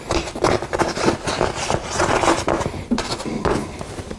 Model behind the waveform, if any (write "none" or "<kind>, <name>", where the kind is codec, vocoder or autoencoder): none